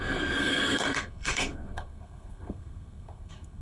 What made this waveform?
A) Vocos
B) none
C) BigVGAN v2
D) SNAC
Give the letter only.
D